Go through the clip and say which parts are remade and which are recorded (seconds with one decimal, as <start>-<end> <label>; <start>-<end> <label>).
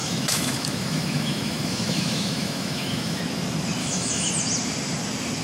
0.0-3.2 remade; 3.2-3.8 recorded; 3.8-4.3 remade; 4.3-5.4 recorded